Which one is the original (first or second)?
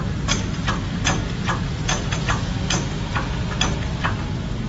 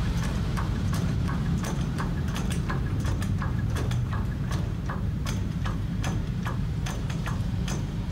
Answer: first